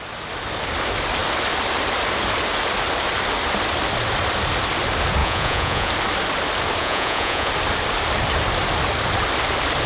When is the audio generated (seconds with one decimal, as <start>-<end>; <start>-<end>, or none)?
5.2-5.9; 6.8-7.5